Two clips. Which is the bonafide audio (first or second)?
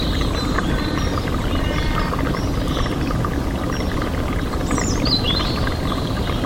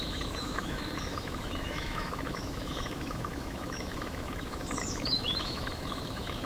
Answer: first